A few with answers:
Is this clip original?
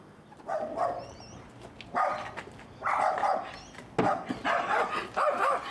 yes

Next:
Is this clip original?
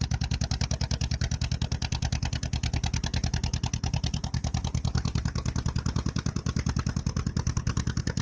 yes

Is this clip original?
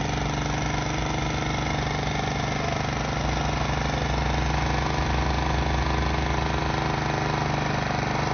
yes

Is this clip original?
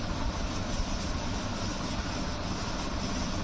yes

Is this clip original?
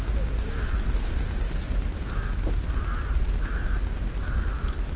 yes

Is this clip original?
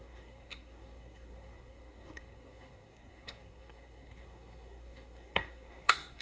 no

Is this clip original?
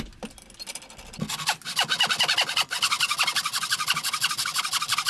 yes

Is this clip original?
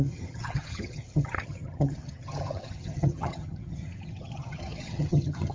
no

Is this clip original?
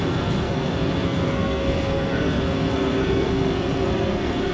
no